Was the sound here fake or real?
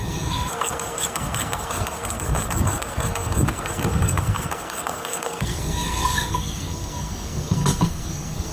fake